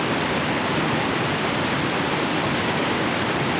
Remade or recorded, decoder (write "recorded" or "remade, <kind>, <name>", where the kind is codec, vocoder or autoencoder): remade, vocoder, BigVGAN v2